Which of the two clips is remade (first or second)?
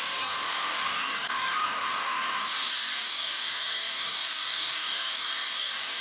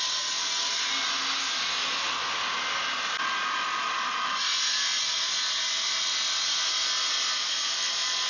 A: first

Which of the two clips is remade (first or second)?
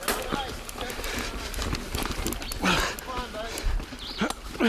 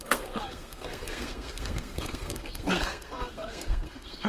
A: second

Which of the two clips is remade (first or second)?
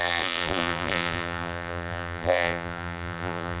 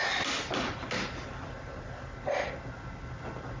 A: first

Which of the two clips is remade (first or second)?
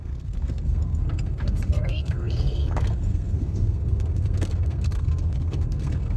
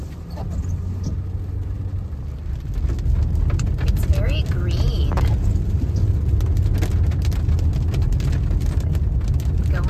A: first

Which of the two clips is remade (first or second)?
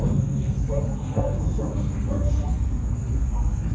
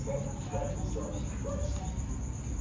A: first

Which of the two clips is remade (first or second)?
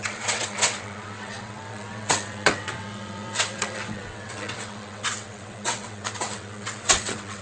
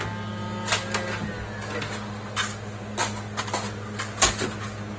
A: first